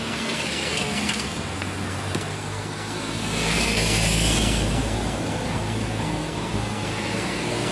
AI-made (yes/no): yes